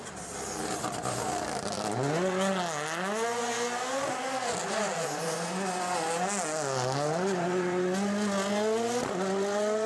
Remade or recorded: recorded